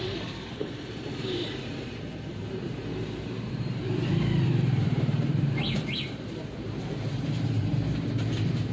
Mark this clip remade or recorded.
remade